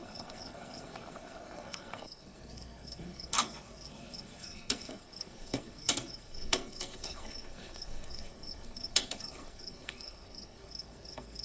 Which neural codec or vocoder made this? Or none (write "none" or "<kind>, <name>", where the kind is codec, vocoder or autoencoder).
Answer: codec, SNAC